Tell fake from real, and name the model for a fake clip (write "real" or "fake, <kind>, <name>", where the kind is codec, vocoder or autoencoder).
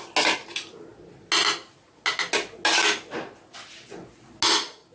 real